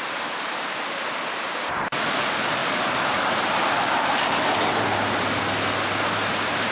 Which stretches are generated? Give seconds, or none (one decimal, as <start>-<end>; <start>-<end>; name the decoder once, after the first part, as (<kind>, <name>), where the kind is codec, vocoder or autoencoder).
none